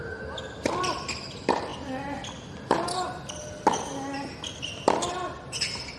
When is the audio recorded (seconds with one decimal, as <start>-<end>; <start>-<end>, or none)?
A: 0.0-6.0